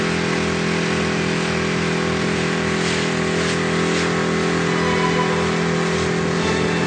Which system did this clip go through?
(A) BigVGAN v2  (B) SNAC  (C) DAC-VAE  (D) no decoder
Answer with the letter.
D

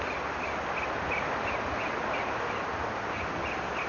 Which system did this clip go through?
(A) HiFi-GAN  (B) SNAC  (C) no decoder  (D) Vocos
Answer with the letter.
C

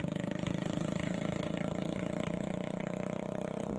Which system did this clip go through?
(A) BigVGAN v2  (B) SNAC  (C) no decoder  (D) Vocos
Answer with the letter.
D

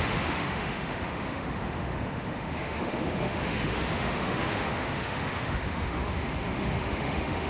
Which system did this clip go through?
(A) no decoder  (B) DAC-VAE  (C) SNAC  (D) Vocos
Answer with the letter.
B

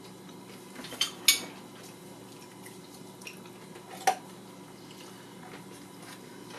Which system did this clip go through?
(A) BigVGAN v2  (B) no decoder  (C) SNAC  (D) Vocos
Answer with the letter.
B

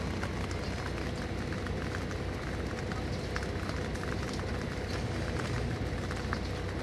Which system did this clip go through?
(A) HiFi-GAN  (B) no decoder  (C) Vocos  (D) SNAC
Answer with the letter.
B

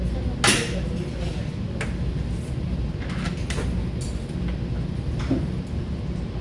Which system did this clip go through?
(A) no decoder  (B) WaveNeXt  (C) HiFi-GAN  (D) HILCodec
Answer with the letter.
A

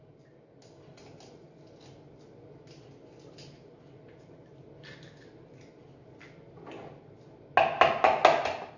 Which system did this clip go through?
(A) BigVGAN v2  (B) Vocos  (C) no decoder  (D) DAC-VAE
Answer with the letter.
C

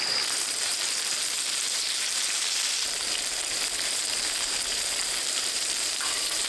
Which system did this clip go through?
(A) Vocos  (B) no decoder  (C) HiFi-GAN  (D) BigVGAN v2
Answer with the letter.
D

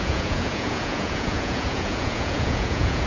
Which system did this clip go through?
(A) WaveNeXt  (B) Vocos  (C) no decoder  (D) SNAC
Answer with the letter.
B